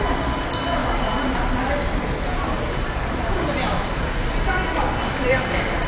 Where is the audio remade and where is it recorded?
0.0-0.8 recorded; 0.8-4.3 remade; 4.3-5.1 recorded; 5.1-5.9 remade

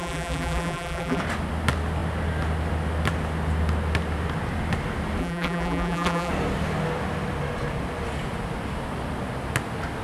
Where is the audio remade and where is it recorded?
0.0-1.2 remade; 1.2-5.2 recorded; 5.2-6.3 remade; 6.3-10.0 recorded

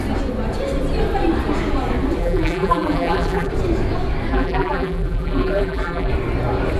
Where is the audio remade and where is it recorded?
0.0-2.2 recorded; 2.2-3.5 remade; 3.5-4.3 recorded; 4.3-6.1 remade; 6.1-6.8 recorded

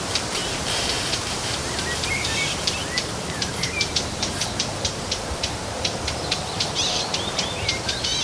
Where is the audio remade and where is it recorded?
0.0-8.2 remade

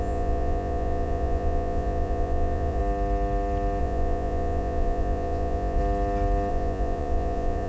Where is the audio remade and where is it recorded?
0.0-2.8 remade; 2.8-3.8 recorded; 3.8-5.8 remade; 5.8-6.5 recorded; 6.5-7.7 remade

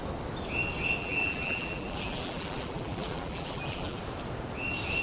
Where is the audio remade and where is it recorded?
0.0-1.0 recorded; 1.0-4.0 remade; 4.0-5.0 recorded